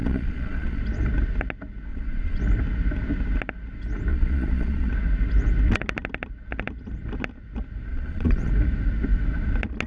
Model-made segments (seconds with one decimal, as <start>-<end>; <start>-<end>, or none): 0.0-0.8; 1.9-2.4; 4.1-4.9; 7.9-8.5